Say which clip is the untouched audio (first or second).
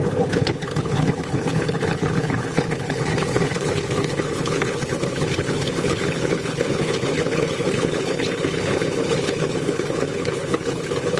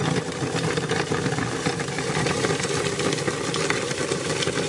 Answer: second